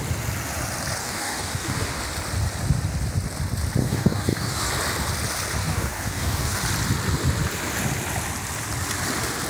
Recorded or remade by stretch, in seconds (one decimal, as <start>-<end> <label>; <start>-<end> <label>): 0.0-1.0 recorded; 1.0-2.0 remade; 2.0-3.8 recorded; 3.8-4.7 remade; 4.7-5.6 recorded; 5.6-6.6 remade; 6.6-9.5 recorded